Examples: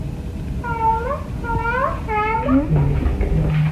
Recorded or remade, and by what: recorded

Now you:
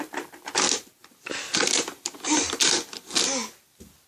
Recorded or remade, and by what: recorded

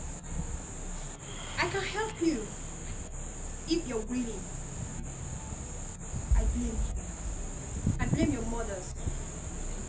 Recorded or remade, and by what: recorded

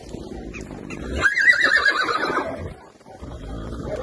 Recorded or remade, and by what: remade, vocoder, BigVGAN v2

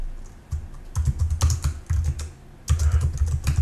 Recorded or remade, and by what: recorded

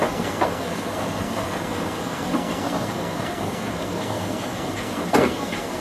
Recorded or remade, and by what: remade, codec, SNAC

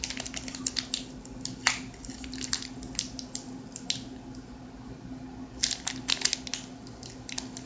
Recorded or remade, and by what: recorded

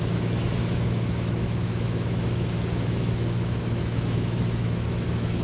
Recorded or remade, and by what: remade, autoencoder, DAC-VAE